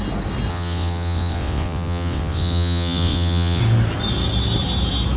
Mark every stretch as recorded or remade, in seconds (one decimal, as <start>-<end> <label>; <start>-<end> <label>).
0.0-0.5 recorded; 0.5-3.6 remade; 3.6-5.2 recorded